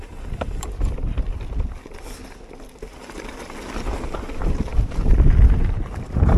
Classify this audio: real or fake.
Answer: real